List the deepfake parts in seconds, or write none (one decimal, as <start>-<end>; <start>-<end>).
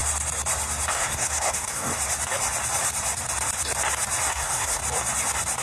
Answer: 0.9-1.9; 4.3-4.8